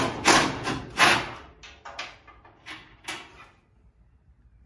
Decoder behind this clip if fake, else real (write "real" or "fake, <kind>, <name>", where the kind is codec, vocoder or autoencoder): real